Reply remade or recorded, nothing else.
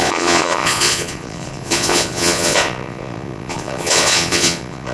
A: remade